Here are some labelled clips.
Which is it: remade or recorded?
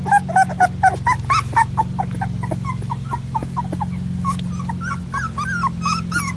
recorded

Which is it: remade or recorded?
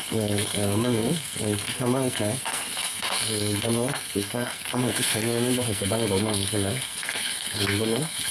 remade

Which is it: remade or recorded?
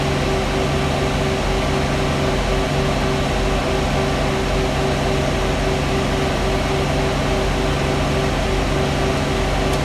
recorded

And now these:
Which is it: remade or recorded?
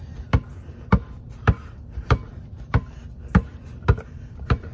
recorded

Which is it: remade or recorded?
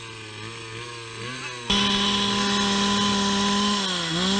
recorded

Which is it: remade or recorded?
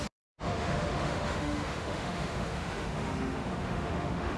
remade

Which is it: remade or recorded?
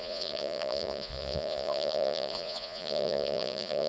remade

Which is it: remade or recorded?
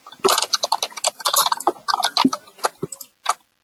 recorded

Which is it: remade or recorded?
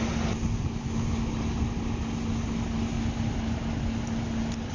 recorded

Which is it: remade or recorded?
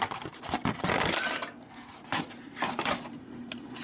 recorded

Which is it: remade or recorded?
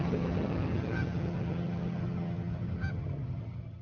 remade